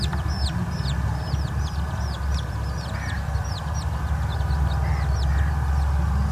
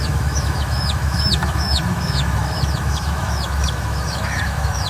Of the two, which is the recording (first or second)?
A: first